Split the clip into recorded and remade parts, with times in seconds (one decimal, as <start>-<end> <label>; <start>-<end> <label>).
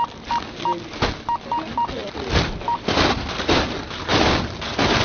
0.0-2.0 recorded; 2.0-2.9 remade; 2.9-4.1 recorded; 4.1-5.0 remade